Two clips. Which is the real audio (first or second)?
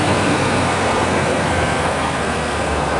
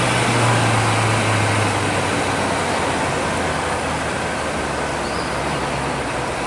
second